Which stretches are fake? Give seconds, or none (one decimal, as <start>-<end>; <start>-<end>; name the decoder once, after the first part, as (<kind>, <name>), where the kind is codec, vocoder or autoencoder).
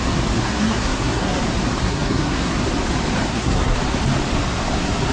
0.4-1.4 (codec, SNAC); 1.8-2.5; 3.3-3.8